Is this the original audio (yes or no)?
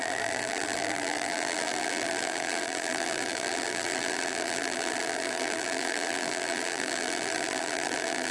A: no